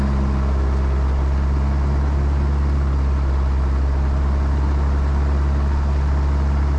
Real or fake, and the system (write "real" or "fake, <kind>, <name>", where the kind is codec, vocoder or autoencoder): real